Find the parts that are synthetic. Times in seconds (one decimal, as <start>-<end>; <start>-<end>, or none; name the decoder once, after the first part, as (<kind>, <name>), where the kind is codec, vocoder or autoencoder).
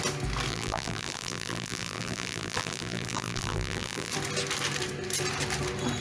0.5-4.1 (vocoder, BigVGAN v2)